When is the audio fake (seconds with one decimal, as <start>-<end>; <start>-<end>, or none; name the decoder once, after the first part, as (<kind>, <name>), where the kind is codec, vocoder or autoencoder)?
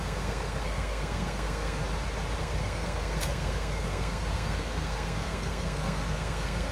0.0-1.8 (codec, SNAC); 2.4-6.7